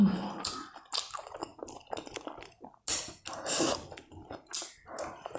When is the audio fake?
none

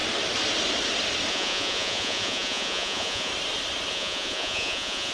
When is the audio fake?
1.3-3.3 (vocoder, Vocos); 3.9-5.1

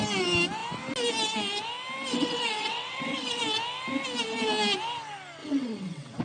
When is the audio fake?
2.1-3.4 (vocoder, WaveNeXt); 5.4-6.2

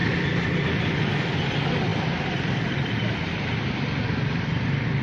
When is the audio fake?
none

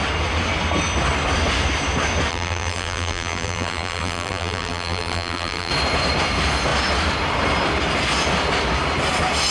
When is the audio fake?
2.3-5.7 (vocoder, BigVGAN v2)

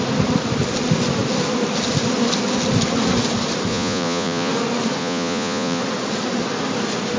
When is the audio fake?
3.7-4.5 (vocoder, Vocos); 5.0-5.8